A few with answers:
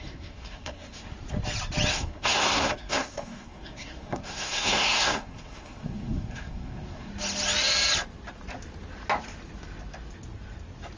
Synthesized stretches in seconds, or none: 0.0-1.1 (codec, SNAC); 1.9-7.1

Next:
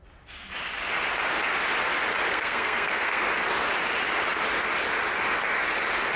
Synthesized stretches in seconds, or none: 2.3-3.2 (codec, SNAC)

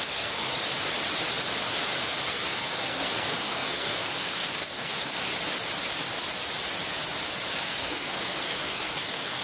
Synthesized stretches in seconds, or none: 0.0-0.5 (codec, SNAC); 1.8-5.3; 7.5-9.4

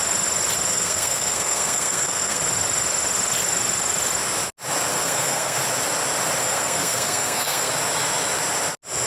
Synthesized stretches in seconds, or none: 0.7-2.4 (codec, SNAC); 4.9-5.6; 6.4-7.7

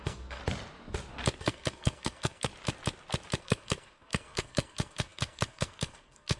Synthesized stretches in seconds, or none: 0.0-0.4 (codec, SNAC); 1.4-2.5; 3.4-6.4

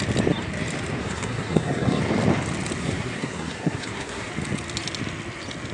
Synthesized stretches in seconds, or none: 1.0-2.0 (codec, SNAC); 2.8-4.3